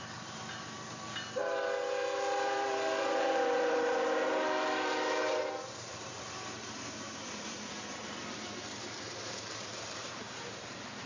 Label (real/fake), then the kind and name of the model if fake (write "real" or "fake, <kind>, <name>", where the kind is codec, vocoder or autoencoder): fake, vocoder, BigVGAN v2